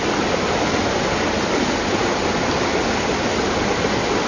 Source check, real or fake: real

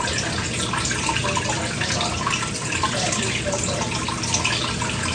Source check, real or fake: real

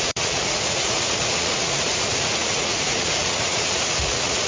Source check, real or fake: fake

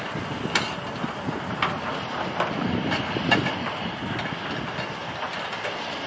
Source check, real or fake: real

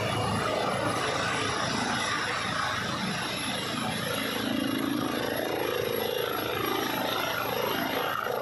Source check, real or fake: real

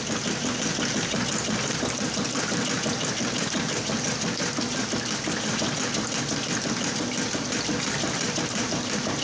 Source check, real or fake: real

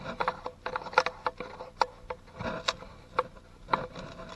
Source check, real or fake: real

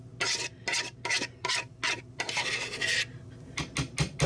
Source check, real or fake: real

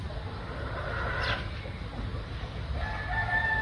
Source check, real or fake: real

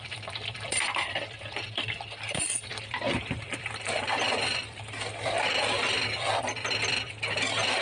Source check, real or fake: fake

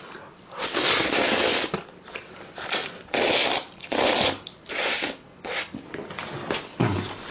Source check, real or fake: real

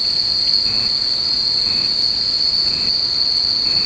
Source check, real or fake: real